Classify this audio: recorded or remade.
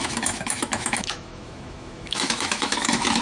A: remade